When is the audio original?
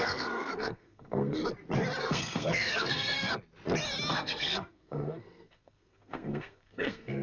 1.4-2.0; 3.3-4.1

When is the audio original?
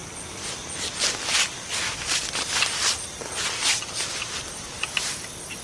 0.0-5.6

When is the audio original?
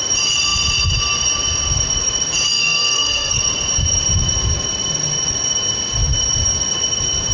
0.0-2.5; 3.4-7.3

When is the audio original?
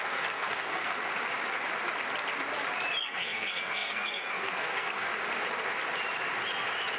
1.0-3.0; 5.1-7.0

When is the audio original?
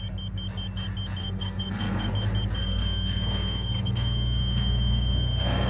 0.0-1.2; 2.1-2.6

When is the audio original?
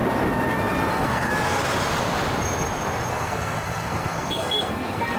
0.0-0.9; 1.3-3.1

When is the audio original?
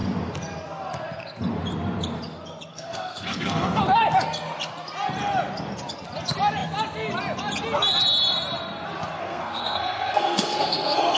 0.0-2.7; 3.8-9.2